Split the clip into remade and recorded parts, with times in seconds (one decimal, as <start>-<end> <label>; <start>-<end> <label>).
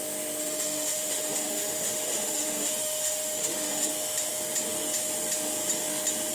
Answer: 0.0-0.4 recorded; 0.4-3.9 remade; 3.9-6.3 recorded